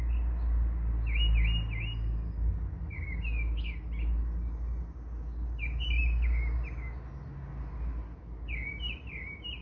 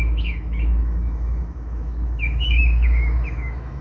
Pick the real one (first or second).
first